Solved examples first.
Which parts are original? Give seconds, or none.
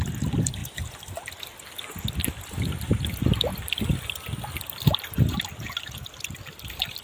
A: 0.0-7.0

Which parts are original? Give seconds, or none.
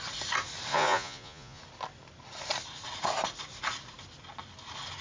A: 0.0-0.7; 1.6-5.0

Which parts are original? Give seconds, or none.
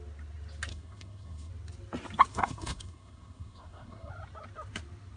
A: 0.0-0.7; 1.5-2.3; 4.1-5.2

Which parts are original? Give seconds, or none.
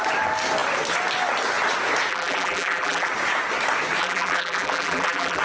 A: 0.0-2.1; 3.1-4.0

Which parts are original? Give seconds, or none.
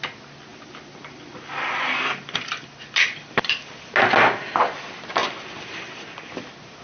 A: 0.0-0.5; 3.9-5.2; 6.3-6.8